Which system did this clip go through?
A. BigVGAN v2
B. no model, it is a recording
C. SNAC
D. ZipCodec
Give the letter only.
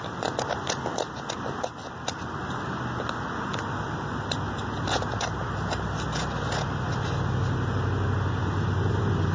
B